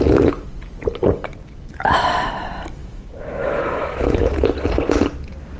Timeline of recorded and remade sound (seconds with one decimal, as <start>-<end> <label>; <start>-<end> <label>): 0.0-2.8 recorded; 2.8-4.3 remade; 4.3-5.6 recorded